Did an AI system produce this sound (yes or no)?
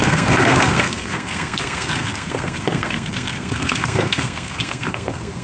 yes